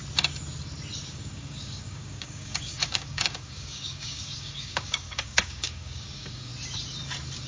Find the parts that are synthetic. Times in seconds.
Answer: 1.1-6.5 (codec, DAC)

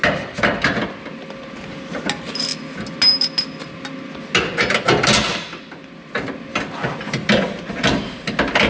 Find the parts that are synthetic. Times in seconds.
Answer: none

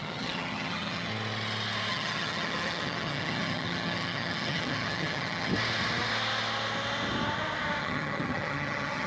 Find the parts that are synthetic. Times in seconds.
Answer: 0.0-1.1 (vocoder, HiFi-GAN); 1.9-5.5; 7.8-9.1

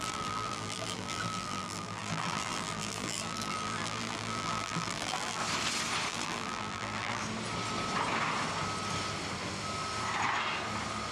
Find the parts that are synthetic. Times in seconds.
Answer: 0.0-5.4 (vocoder, BigVGAN v2); 6.1-7.2